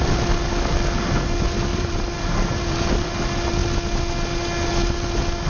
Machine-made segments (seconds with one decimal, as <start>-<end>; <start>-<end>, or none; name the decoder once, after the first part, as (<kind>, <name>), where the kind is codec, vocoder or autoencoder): 1.7-3.1 (vocoder, BigVGAN v2)